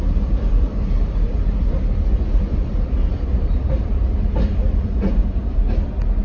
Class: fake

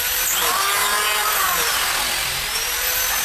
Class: fake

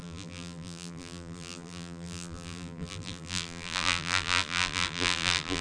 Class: fake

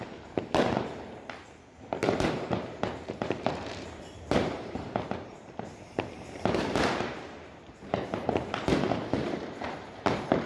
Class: fake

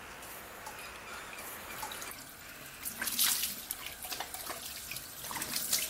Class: real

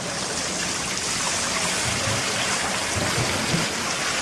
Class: real